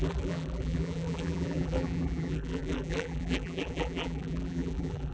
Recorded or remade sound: remade